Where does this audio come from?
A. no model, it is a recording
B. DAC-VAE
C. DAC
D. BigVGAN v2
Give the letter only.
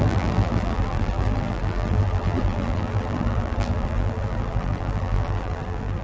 D